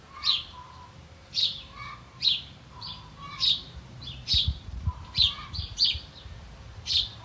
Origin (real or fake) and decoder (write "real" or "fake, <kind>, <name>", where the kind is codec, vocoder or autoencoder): fake, vocoder, BigVGAN v2